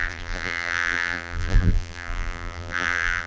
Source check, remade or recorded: remade